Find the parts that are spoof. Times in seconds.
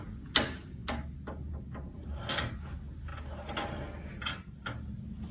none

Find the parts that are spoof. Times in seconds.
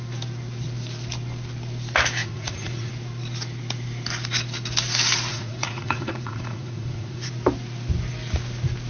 2.2-2.9 (vocoder, Vocos); 5.3-7.3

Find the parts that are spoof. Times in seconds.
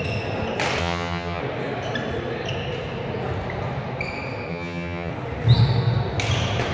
0.8-1.4 (vocoder, HiFi-GAN); 4.5-5.1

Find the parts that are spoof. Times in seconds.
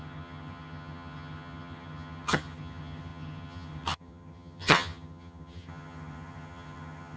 0.0-7.2 (vocoder, HiFi-GAN)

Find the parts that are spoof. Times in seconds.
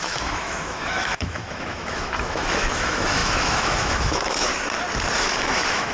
0.0-4.5 (autoencoder, DAC-VAE); 5.2-5.9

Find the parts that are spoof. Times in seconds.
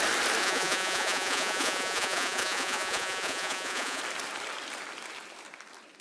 0.4-4.0 (vocoder, Vocos)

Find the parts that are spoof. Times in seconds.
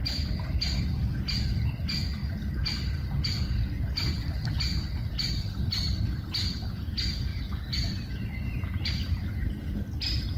0.0-0.8 (vocoder, BigVGAN v2); 2.2-6.0; 7.3-9.2